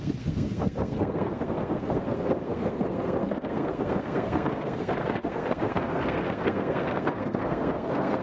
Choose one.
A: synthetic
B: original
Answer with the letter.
A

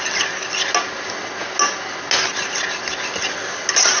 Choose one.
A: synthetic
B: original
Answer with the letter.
B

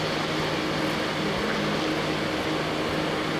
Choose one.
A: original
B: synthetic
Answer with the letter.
A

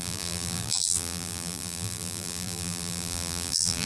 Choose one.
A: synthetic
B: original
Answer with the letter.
A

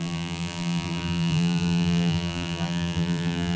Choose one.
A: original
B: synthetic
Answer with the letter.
B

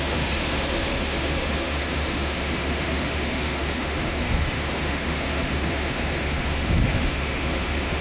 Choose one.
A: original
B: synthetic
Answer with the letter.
B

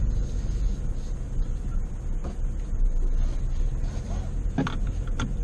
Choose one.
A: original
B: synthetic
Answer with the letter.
A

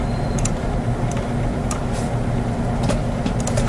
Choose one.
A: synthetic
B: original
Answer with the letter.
B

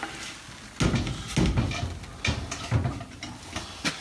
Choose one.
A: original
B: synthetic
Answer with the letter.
A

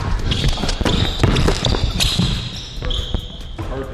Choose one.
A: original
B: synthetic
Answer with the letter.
A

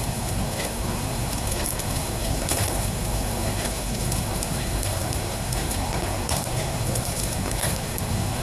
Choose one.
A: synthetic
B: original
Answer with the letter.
A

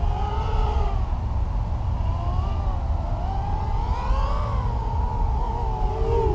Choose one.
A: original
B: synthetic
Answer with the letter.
A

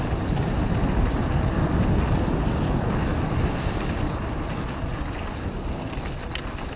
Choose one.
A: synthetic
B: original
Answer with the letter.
B